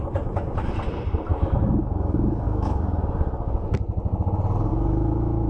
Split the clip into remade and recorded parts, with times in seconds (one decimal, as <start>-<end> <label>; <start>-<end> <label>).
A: 0.0-1.3 recorded; 1.3-2.8 remade; 2.8-4.7 recorded; 4.7-5.5 remade